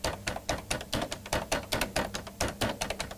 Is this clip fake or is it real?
real